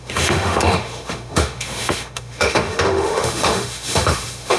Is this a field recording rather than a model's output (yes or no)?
no